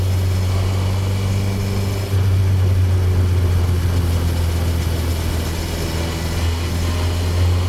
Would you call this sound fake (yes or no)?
no